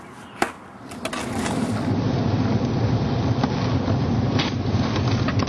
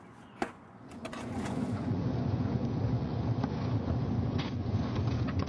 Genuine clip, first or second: first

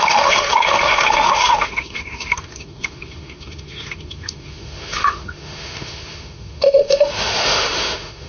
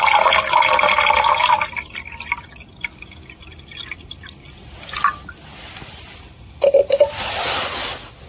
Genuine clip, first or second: second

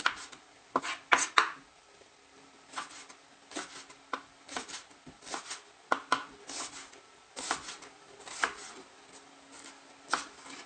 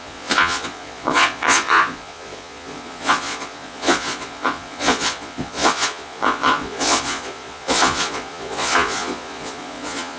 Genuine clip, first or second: first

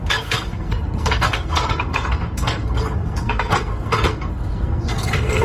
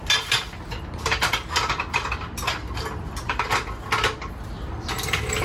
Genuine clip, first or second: second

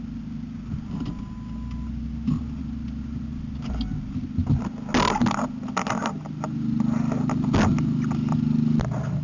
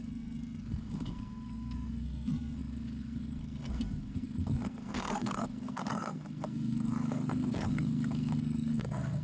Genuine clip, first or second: first